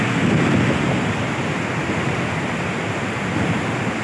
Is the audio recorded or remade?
recorded